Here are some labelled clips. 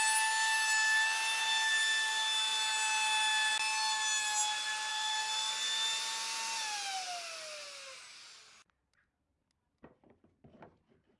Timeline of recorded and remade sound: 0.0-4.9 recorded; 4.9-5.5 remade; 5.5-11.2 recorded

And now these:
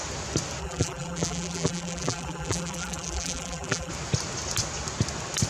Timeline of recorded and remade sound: 0.0-0.6 recorded; 0.6-3.9 remade; 3.9-5.5 recorded